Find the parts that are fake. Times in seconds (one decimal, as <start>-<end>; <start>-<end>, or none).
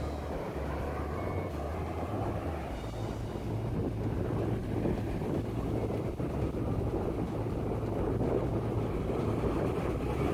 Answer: none